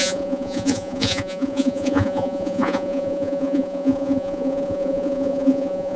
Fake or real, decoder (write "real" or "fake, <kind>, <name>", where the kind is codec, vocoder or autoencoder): fake, vocoder, Vocos